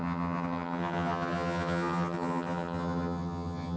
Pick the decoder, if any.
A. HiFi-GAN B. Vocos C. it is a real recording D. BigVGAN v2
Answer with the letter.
A